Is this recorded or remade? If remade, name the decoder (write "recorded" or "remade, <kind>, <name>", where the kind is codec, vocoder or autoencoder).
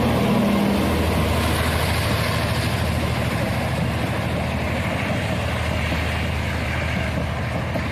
recorded